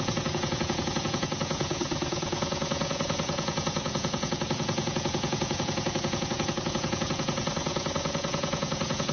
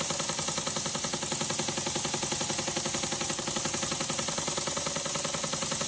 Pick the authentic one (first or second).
second